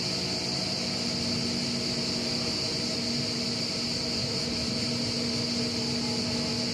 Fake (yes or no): no